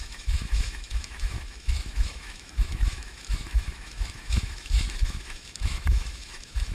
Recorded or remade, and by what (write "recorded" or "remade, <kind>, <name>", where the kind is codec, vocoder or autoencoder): remade, autoencoder, DAC-VAE